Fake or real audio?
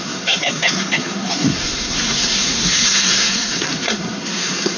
fake